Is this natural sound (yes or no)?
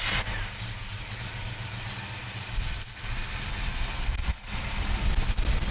yes